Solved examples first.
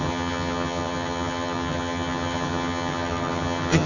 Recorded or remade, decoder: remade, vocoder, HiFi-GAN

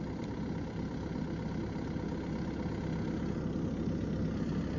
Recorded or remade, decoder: recorded